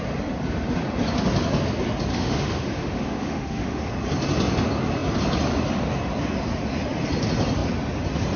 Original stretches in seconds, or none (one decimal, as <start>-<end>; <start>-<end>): 0.0-2.1; 3.8-8.4